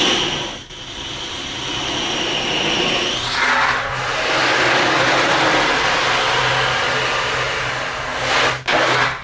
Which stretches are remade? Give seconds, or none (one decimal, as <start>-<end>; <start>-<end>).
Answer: 4.4-5.1